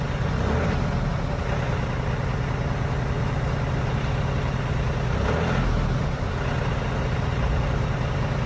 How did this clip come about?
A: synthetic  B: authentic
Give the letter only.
B